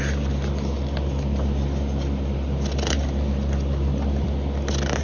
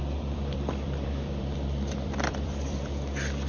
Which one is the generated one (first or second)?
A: second